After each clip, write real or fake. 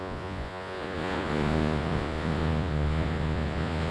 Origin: fake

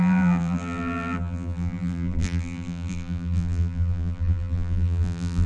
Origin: fake